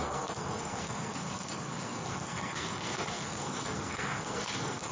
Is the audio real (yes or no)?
no